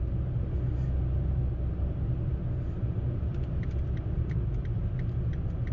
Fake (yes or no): no